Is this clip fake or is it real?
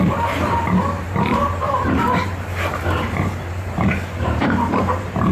fake